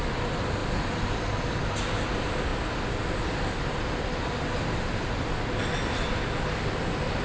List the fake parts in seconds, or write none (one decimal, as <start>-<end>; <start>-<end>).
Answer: none

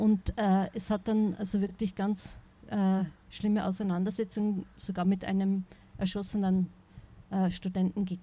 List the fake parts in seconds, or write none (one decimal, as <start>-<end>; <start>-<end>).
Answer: none

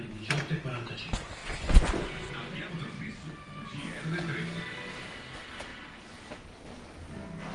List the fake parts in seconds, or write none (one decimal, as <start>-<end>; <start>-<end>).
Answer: 1.4-2.7